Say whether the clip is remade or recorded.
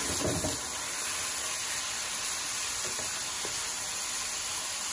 recorded